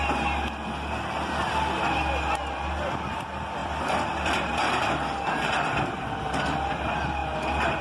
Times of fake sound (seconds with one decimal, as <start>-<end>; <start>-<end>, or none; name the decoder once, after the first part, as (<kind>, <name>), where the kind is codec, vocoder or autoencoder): 3.6-6.2 (vocoder, BigVGAN v2)